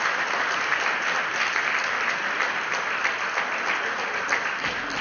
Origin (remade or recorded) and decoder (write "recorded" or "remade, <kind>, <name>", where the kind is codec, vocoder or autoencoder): recorded